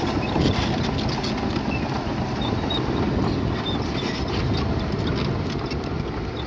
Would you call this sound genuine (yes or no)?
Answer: yes